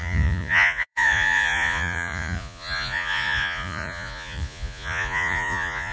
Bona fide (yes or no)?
no